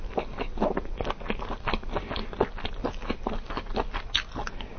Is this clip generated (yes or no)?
no